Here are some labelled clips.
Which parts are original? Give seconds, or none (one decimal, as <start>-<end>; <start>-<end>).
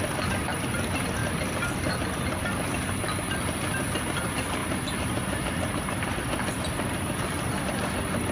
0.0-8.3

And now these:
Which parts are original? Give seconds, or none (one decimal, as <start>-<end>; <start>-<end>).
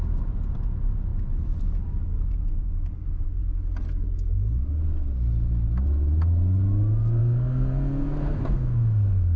0.0-7.2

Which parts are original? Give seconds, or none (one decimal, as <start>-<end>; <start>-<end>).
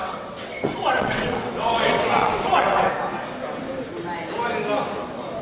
2.9-5.4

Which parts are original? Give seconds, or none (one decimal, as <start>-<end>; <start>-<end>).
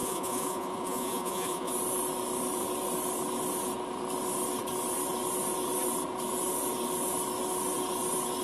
1.7-8.4